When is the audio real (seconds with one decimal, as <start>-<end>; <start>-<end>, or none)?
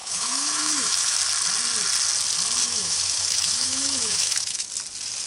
1.2-2.6; 4.7-5.3